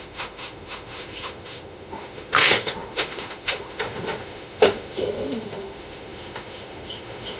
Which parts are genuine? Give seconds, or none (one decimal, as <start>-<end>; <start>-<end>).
none